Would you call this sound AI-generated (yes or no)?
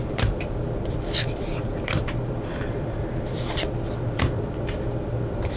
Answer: yes